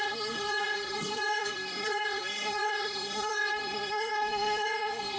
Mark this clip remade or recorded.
remade